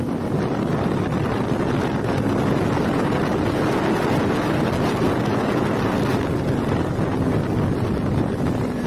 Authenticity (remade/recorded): recorded